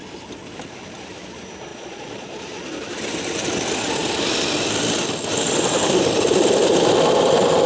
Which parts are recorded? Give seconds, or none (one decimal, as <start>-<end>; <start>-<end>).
0.0-1.7; 2.4-7.7